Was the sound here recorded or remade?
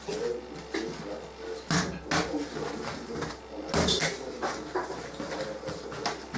recorded